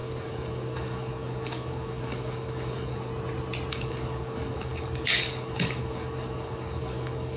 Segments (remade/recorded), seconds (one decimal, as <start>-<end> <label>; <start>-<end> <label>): 0.0-3.1 remade; 3.1-3.7 recorded; 3.7-7.4 remade